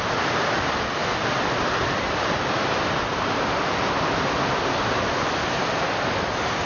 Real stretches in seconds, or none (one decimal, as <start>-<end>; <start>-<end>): 0.0-6.7